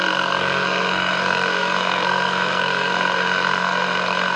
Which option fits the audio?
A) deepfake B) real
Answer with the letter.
A